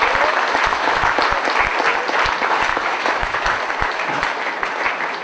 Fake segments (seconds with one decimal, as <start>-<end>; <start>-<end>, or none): 0.7-1.2; 2.7-3.6

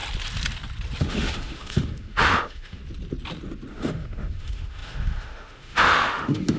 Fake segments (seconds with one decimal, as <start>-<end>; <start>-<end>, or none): 1.0-2.8; 3.7-6.6

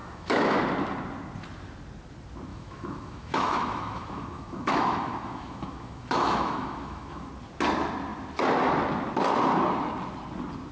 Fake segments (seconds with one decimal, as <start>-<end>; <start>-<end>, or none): 0.0-0.6; 2.5-7.3

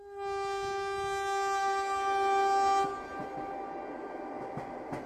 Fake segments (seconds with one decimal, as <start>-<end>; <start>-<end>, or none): none